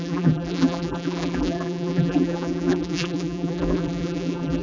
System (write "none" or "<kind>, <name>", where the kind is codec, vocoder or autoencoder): vocoder, BigVGAN v2